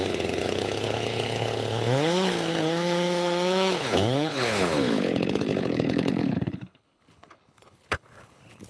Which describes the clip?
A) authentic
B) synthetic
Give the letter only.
B